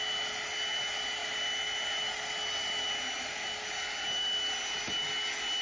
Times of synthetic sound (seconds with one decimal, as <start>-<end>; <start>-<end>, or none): none